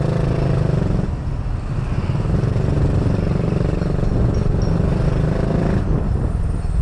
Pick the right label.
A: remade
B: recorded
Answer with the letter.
B